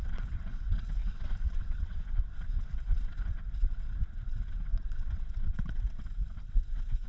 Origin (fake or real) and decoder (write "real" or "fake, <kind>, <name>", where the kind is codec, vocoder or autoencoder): fake, vocoder, WaveNeXt